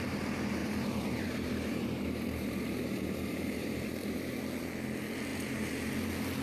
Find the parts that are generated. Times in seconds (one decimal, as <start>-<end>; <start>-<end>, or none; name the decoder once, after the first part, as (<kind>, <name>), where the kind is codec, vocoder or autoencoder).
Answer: 0.6-4.4 (vocoder, BigVGAN v2); 5.3-5.9